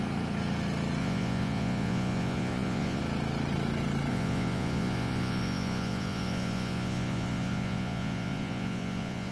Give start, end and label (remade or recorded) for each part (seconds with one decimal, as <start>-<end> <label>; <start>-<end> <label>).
0.0-1.0 recorded; 1.0-3.0 remade; 3.0-4.1 recorded; 4.1-9.3 remade